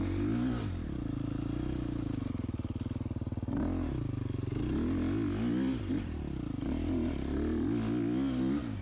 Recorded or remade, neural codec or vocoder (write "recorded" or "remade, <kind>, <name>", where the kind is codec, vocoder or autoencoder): recorded